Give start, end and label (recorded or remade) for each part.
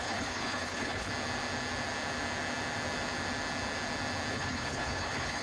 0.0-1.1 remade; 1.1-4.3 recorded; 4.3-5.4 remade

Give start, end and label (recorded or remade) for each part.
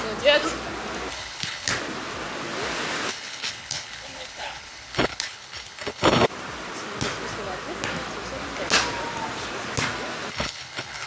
0.0-1.1 recorded; 1.1-1.7 remade; 1.7-3.1 recorded; 3.1-6.3 remade; 6.3-10.3 recorded; 10.3-11.1 remade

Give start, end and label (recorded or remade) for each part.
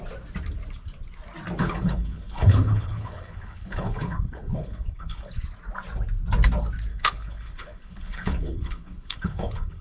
0.0-1.6 recorded; 1.6-5.3 remade; 5.3-6.9 recorded; 6.9-9.8 remade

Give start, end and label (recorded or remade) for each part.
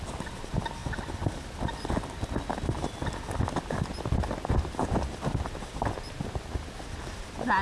0.0-7.6 recorded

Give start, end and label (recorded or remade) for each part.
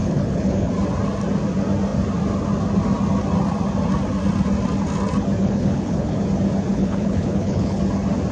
0.0-0.7 remade; 0.7-5.4 recorded; 5.4-6.2 remade; 6.2-6.7 recorded; 6.7-7.8 remade; 7.8-8.3 recorded